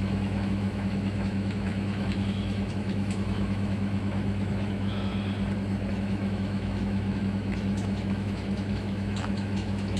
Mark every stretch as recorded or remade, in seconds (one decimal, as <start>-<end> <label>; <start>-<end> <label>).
0.0-5.1 remade; 5.1-5.9 recorded; 5.9-10.0 remade